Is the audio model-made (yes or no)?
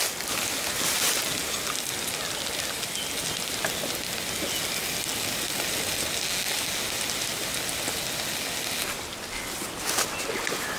no